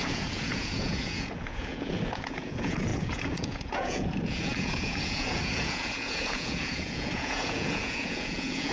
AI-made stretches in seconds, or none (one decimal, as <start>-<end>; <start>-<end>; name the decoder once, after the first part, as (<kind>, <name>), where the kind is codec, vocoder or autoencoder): 0.0-8.7 (vocoder, Vocos)